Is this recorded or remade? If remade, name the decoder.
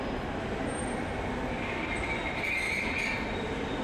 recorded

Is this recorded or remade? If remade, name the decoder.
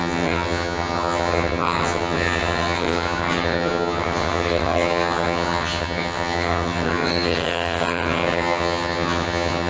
remade, vocoder, HiFi-GAN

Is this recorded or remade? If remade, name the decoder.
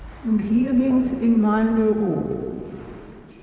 remade, vocoder, Vocos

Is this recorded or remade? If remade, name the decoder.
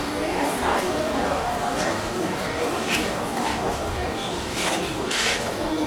remade, codec, DAC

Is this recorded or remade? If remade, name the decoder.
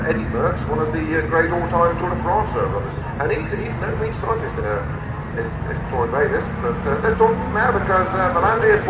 recorded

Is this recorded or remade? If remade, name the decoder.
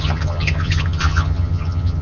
remade, vocoder, HiFi-GAN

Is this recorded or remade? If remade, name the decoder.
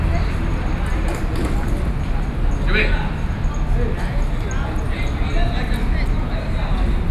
recorded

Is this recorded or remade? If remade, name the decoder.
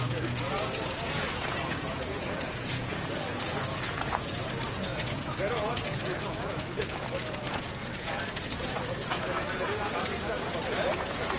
remade, vocoder, Vocos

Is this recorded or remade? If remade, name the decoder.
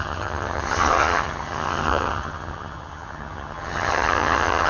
remade, vocoder, HiFi-GAN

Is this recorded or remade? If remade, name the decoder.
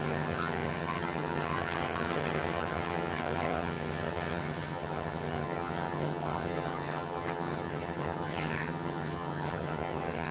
remade, vocoder, HiFi-GAN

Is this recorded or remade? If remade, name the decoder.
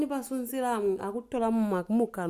recorded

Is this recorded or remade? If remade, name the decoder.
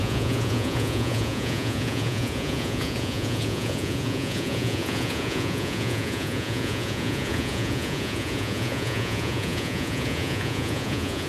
remade, vocoder, Vocos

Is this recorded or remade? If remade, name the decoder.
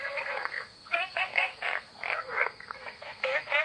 remade, codec, SNAC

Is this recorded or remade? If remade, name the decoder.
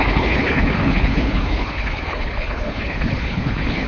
remade, codec, HILCodec